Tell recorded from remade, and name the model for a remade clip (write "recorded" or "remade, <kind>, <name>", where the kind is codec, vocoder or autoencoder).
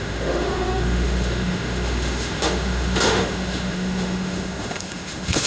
remade, autoencoder, DAC-VAE